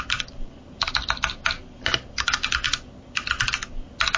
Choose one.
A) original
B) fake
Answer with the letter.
A